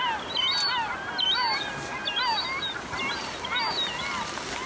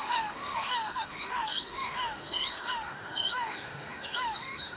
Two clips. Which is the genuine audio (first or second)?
first